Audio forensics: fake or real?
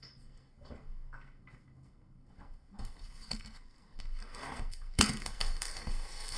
fake